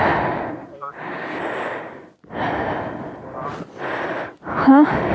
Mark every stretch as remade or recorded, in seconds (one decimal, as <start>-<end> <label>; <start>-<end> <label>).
0.0-5.1 recorded